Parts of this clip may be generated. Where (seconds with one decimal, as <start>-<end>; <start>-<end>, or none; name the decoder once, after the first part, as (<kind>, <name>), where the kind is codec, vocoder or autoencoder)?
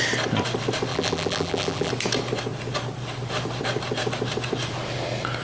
0.9-1.9 (vocoder, BigVGAN v2)